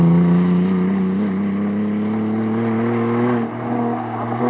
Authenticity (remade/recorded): recorded